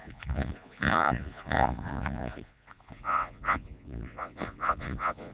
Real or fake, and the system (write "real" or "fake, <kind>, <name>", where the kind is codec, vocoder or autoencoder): fake, vocoder, Vocos